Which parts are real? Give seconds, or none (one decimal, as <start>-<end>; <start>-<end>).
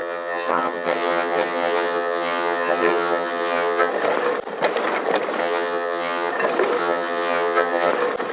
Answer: 3.9-5.4; 6.3-6.8; 7.9-8.3